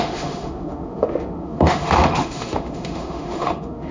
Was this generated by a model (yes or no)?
yes